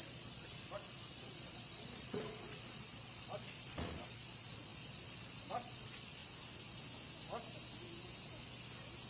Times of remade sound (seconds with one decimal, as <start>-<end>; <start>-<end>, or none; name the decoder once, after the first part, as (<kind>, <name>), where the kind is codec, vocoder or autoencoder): 0.0-6.2 (vocoder, Vocos)